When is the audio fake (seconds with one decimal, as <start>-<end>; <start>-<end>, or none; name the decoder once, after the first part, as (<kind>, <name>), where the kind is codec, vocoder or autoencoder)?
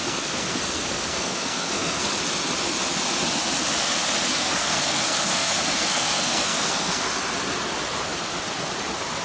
0.0-2.2 (codec, SNAC); 4.3-7.1